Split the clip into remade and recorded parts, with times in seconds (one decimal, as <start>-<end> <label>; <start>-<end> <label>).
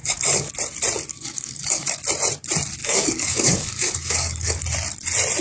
0.0-0.5 remade; 0.5-1.1 recorded; 1.1-2.0 remade; 2.0-2.8 recorded; 2.8-4.6 remade; 4.6-5.4 recorded